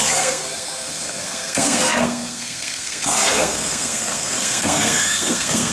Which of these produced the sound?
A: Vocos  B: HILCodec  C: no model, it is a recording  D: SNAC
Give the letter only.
D